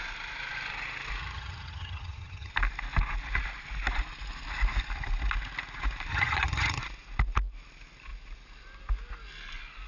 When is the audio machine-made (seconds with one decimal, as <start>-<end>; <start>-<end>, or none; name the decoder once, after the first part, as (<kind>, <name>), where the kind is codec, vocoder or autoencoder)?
1.2-2.5 (vocoder, HiFi-GAN); 6.1-6.8